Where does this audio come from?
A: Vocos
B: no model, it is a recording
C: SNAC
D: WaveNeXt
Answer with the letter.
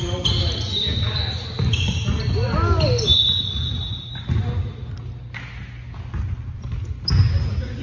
B